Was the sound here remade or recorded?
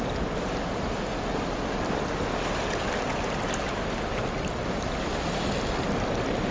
recorded